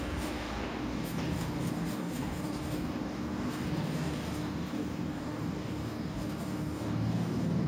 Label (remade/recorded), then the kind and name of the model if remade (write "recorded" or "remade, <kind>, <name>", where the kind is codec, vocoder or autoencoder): remade, codec, DAC